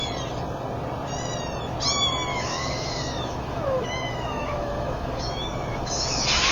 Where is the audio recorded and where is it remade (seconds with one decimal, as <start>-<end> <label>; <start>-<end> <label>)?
0.0-2.3 recorded; 2.3-6.5 remade